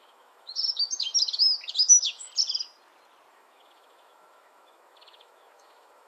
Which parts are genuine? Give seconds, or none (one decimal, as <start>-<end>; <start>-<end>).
1.1-1.7; 2.3-3.3